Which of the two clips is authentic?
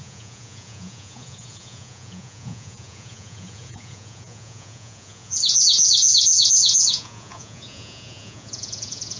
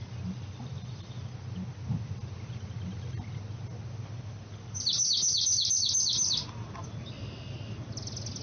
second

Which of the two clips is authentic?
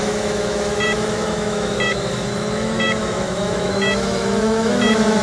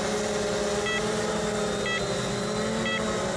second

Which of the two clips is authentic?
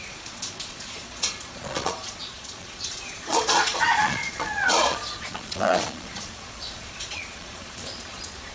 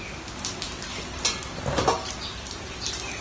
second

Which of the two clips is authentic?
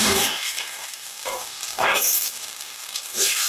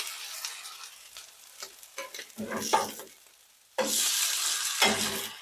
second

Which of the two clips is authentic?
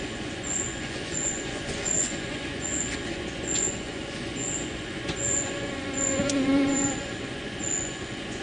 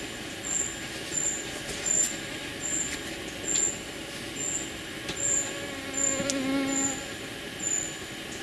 second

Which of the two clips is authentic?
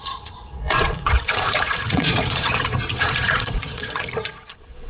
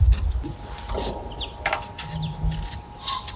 second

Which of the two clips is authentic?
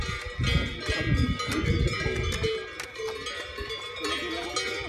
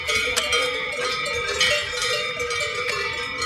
first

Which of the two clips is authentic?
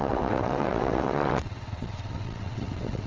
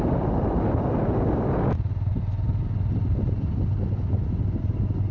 second